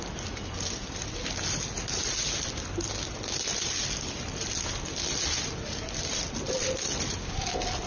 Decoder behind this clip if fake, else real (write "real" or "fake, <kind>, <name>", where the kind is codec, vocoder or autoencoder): real